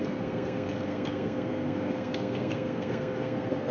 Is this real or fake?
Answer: fake